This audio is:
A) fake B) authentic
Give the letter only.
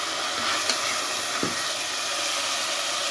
B